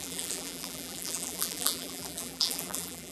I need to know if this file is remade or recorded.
remade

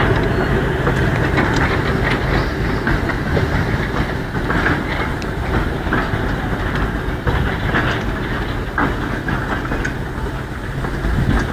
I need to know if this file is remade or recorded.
recorded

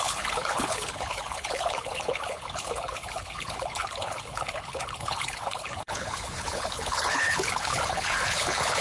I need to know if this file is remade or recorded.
remade